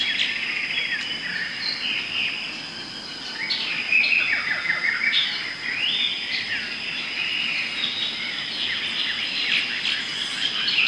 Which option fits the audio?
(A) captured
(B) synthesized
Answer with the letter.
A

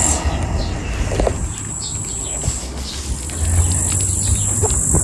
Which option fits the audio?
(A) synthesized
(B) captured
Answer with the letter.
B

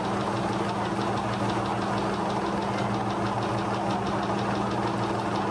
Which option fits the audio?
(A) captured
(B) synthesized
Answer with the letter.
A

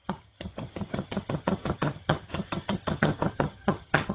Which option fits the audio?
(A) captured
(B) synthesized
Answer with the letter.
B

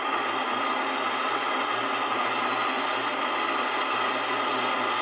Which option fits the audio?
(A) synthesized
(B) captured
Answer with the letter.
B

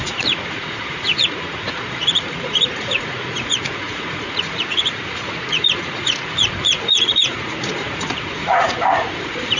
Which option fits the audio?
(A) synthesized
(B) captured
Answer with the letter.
A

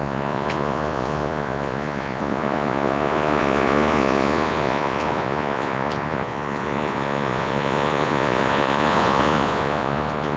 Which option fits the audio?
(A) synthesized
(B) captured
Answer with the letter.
A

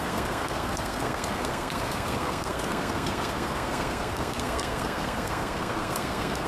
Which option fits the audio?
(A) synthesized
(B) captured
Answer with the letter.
A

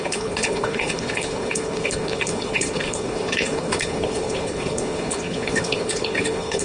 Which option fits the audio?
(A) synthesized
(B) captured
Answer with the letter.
A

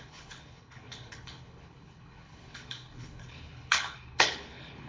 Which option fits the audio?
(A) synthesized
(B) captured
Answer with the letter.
A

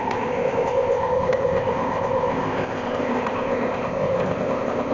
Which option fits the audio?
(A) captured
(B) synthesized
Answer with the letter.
B